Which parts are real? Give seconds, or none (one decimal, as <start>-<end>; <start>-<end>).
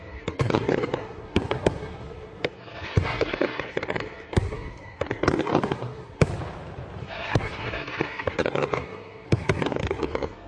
6.3-7.0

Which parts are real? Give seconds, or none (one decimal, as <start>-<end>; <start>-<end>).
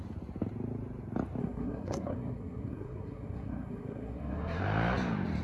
0.0-1.4; 4.6-5.4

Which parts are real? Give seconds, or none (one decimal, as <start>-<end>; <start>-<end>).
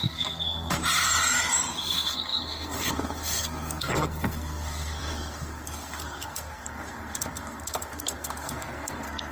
0.8-1.8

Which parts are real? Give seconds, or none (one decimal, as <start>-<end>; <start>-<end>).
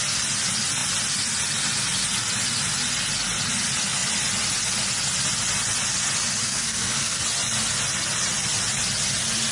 0.0-6.5; 7.2-9.5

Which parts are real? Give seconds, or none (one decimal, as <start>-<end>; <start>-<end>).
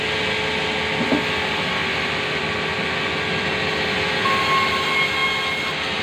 0.0-6.0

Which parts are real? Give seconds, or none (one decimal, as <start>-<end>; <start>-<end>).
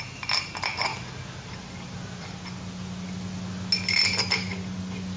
0.0-5.2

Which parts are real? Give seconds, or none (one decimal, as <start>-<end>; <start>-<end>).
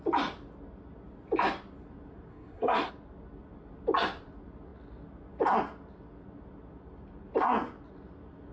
0.0-2.3; 2.9-8.5